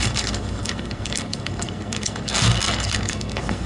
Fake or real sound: fake